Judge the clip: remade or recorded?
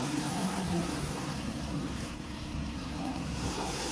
remade